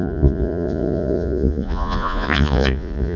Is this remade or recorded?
remade